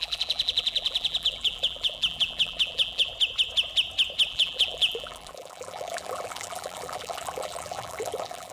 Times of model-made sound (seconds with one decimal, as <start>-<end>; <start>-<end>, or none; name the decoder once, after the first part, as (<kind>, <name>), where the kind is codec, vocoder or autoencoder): 0.0-3.1 (vocoder, BigVGAN v2); 4.3-8.5